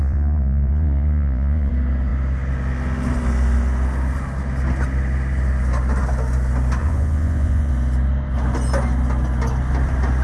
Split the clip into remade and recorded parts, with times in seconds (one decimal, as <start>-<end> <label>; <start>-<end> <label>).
0.0-1.7 remade; 1.7-6.8 recorded; 6.8-7.7 remade; 7.7-10.2 recorded